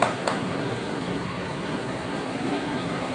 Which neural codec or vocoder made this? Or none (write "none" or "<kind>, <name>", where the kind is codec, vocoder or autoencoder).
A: codec, SNAC